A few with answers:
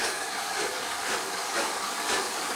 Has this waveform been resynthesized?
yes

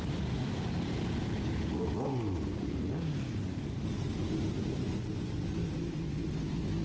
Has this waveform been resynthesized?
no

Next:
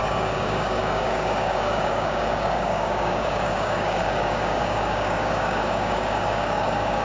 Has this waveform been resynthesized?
yes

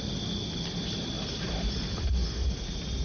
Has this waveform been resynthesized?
no